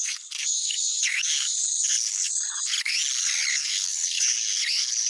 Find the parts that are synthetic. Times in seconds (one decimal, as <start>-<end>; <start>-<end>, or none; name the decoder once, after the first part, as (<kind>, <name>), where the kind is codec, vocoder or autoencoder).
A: 0.0-3.0 (codec, HILCodec); 3.5-5.1